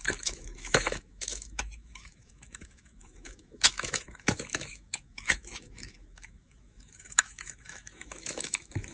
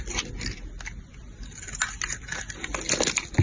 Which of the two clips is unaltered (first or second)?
second